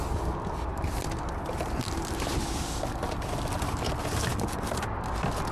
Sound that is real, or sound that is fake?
real